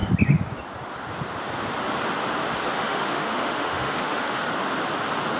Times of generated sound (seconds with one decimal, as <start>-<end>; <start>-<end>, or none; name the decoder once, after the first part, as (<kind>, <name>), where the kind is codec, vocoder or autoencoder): 2.7-4.4 (autoencoder, DAC-VAE)